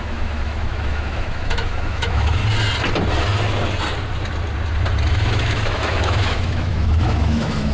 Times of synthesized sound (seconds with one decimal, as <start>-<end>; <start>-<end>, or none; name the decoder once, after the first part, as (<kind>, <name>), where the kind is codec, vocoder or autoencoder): 0.0-2.4 (autoencoder, DAC-VAE); 5.1-7.7